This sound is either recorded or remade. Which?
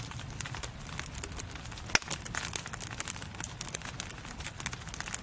recorded